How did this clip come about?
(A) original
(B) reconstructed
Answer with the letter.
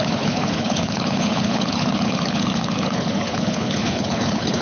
B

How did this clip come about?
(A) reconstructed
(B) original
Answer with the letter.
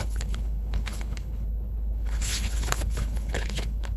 A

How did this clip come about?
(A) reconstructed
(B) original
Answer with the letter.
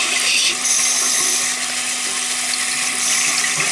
B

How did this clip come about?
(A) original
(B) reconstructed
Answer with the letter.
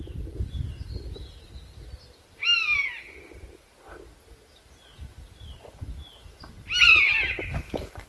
A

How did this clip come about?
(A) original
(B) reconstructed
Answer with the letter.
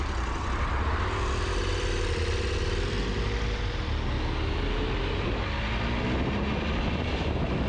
A